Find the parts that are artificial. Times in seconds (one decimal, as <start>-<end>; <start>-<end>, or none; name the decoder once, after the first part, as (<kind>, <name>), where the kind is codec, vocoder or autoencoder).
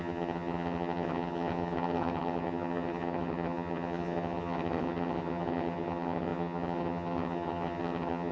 0.0-8.3 (vocoder, HiFi-GAN)